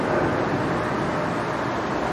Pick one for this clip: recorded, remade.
recorded